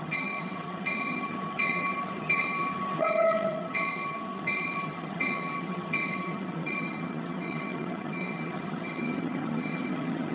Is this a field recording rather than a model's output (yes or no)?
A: no